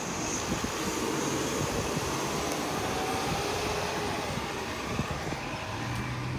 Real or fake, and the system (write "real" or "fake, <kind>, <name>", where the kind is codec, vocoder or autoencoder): real